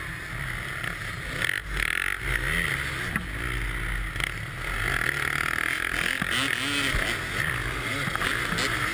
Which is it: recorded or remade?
recorded